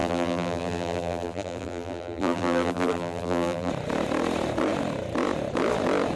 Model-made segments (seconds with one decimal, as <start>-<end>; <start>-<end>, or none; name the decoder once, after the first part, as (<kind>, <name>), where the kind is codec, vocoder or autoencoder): 0.0-3.7 (vocoder, BigVGAN v2)